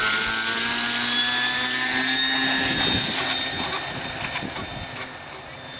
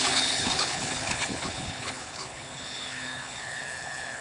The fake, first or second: second